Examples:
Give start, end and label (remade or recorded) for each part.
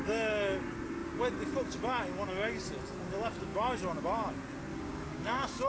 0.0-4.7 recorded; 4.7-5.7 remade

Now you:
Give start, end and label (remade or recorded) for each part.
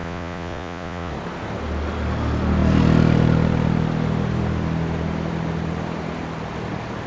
0.0-1.1 remade; 1.1-7.1 recorded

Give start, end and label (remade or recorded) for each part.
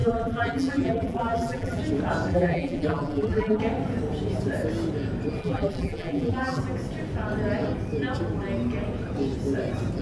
0.0-1.8 remade; 1.8-2.3 recorded; 2.3-3.6 remade; 3.6-5.4 recorded; 5.4-6.6 remade; 6.6-10.0 recorded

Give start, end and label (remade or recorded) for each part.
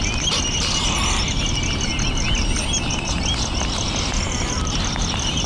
0.0-1.9 remade; 1.9-2.9 recorded; 2.9-5.5 remade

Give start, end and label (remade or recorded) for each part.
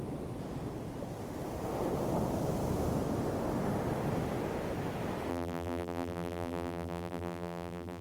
0.0-5.3 recorded; 5.3-8.0 remade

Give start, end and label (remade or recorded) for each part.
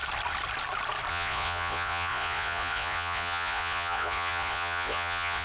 0.0-1.1 recorded; 1.1-5.4 remade